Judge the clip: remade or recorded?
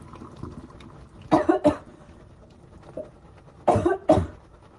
recorded